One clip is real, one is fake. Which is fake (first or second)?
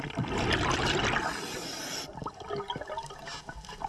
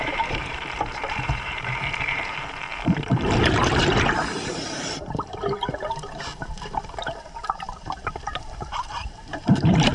second